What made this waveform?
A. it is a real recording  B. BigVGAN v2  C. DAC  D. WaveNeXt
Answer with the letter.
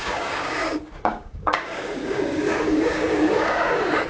C